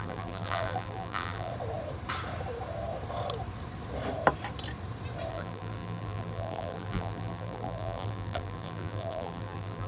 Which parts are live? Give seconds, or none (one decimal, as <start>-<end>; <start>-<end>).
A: 1.5-5.3